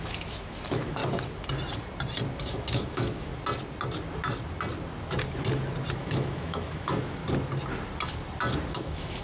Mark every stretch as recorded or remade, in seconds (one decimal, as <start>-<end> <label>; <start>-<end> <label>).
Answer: 0.0-1.0 remade; 1.0-2.5 recorded; 2.5-3.3 remade; 3.3-6.0 recorded; 6.0-7.2 remade; 7.2-8.7 recorded; 8.7-9.2 remade